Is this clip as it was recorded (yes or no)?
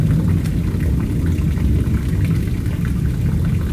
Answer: yes